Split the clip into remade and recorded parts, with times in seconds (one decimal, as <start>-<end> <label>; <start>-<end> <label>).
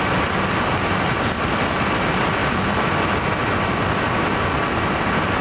0.0-5.4 recorded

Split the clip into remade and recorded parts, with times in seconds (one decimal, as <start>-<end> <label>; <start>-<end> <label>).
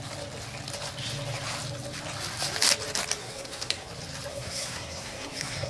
0.0-3.2 recorded; 3.2-3.9 remade; 3.9-4.3 recorded; 4.3-5.7 remade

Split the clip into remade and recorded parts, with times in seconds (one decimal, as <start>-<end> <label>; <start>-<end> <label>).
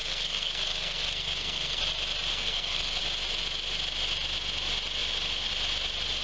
0.0-1.8 remade; 1.8-2.3 recorded; 2.3-3.0 remade; 3.0-6.2 recorded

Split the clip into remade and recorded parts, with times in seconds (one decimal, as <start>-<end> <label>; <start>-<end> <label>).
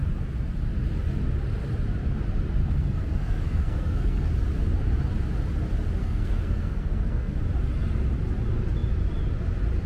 0.0-2.6 recorded; 2.6-4.3 remade; 4.3-6.0 recorded; 6.0-7.4 remade; 7.4-9.9 recorded